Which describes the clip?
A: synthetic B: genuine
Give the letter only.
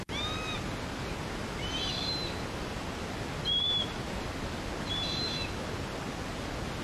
B